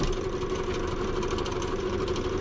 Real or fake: real